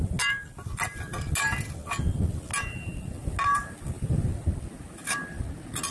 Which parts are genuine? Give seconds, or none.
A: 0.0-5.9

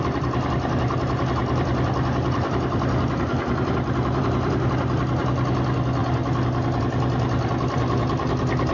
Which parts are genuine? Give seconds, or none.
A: 0.0-1.4; 4.7-8.7

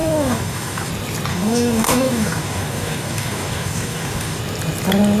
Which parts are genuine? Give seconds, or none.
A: 0.9-1.3; 4.4-5.2